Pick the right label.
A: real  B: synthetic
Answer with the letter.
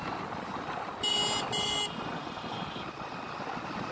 A